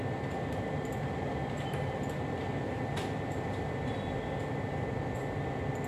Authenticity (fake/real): real